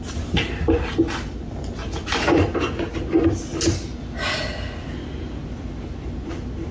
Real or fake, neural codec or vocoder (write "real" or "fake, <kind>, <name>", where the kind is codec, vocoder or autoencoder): real